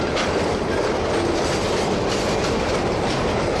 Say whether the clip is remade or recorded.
recorded